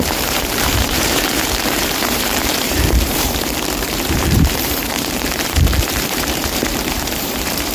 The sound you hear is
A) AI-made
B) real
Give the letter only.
A